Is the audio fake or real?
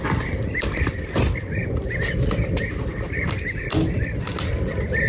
real